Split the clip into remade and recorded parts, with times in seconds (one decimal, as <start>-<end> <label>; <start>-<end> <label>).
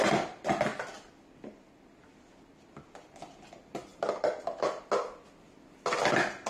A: 0.0-6.5 recorded